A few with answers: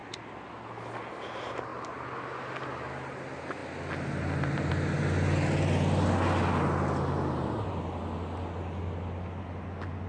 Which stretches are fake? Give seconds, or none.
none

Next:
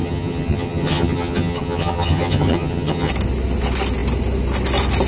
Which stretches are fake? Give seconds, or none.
0.0-3.1 (vocoder, HiFi-GAN)